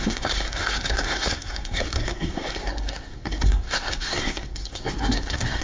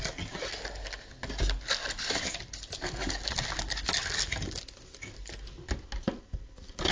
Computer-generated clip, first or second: first